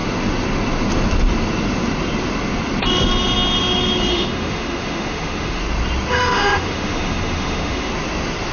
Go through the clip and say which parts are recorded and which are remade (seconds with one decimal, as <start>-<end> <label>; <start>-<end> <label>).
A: 0.0-4.1 recorded; 4.1-5.6 remade; 5.6-6.1 recorded; 6.1-7.9 remade; 7.9-8.5 recorded